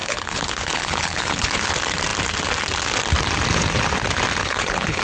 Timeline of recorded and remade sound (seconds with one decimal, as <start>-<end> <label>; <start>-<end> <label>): 0.0-1.7 remade; 1.7-4.4 recorded; 4.4-5.0 remade